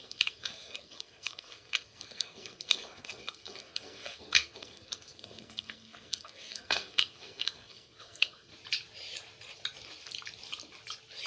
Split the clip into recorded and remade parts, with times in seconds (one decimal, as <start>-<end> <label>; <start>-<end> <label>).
0.0-8.5 remade; 8.5-11.3 recorded